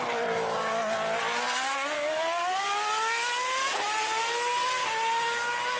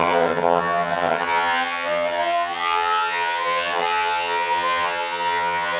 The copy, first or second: second